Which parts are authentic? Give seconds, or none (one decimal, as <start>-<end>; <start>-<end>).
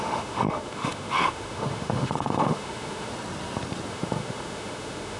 3.1-3.9